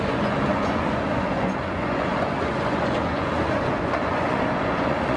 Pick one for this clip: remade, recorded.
remade